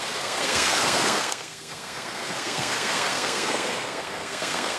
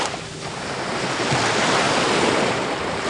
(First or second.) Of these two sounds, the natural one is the second